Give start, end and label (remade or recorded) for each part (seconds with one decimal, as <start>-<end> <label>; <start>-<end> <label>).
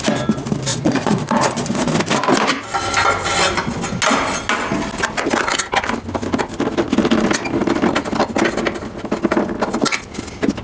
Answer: 0.0-0.7 recorded; 0.7-1.9 remade; 1.9-10.6 recorded